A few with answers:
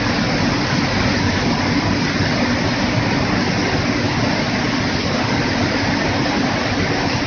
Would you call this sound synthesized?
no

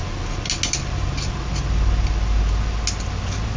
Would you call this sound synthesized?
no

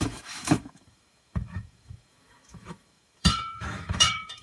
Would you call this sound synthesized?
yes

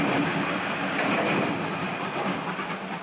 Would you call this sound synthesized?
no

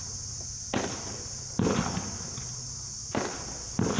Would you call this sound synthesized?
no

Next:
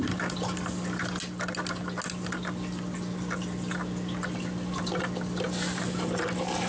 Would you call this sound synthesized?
no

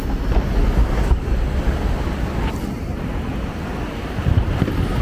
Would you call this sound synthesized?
no